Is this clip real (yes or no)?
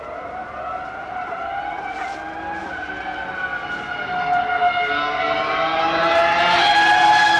yes